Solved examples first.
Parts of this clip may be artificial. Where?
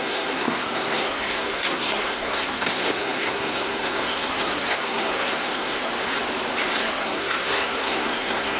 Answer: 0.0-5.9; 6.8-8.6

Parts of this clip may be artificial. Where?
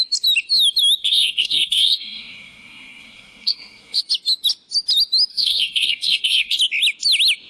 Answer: 1.0-4.0; 5.3-6.6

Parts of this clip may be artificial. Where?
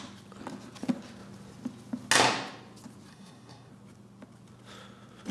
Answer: 3.1-3.7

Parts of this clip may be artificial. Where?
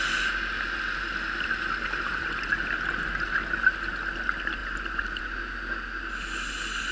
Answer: none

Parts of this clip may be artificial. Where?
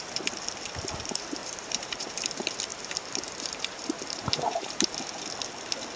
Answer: 1.4-2.2; 2.7-4.9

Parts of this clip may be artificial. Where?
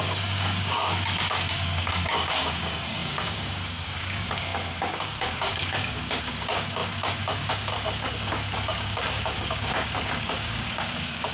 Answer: 0.0-11.3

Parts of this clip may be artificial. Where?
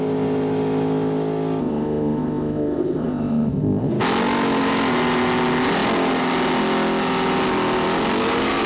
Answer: 1.6-3.9